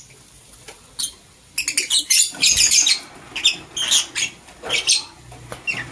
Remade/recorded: recorded